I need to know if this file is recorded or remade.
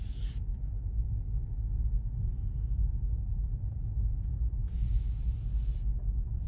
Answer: recorded